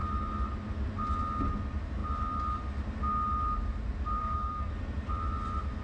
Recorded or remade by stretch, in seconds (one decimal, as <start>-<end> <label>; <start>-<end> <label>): 0.0-4.2 recorded; 4.2-4.7 remade; 4.7-5.8 recorded